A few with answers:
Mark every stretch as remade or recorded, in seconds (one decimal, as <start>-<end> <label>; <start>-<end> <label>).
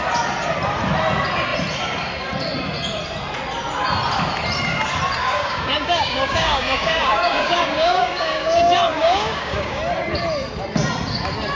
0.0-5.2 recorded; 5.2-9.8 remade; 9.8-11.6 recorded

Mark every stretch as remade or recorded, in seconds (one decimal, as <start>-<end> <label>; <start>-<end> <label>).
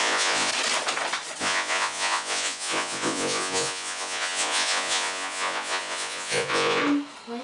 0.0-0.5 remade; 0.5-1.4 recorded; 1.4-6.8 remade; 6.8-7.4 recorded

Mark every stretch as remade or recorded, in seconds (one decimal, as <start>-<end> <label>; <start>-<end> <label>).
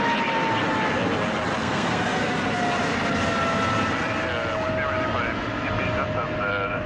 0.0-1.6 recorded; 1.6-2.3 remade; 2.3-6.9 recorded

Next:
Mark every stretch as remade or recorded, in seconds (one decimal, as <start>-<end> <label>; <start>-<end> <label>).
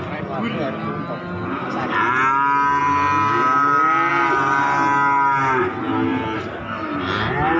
0.0-6.1 recorded; 6.1-7.6 remade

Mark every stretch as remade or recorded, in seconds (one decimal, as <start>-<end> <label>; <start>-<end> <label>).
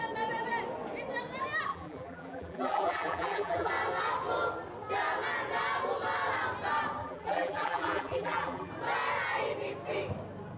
0.0-1.7 recorded; 1.7-3.7 remade; 3.7-7.0 recorded; 7.0-8.7 remade; 8.7-10.6 recorded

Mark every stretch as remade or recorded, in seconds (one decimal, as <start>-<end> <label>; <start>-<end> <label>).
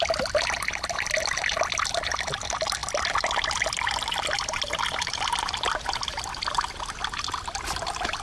0.0-8.2 recorded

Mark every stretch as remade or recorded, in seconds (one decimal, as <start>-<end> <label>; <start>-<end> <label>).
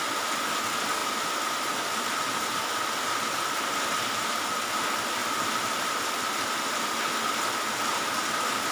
0.0-5.2 recorded; 5.2-6.0 remade; 6.0-8.7 recorded